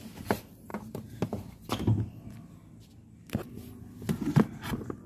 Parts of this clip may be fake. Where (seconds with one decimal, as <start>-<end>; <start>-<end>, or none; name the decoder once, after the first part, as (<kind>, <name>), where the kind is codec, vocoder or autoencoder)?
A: none